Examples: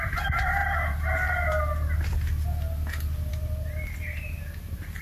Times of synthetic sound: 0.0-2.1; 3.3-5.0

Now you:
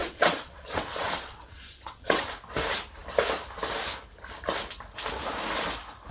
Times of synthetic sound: 0.0-2.3

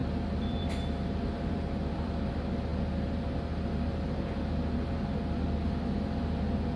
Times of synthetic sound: 0.0-2.3

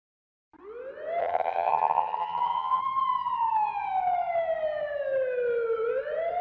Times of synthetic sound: 1.2-2.8

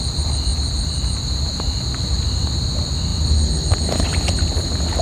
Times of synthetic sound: none

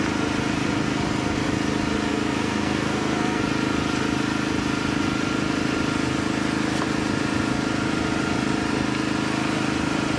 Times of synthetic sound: 2.1-3.4

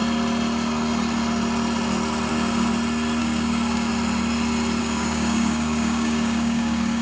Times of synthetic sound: 2.3-2.7; 3.2-3.9; 4.8-7.0

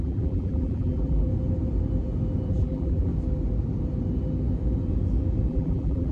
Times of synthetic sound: 0.0-1.3; 2.5-3.1; 5.5-6.1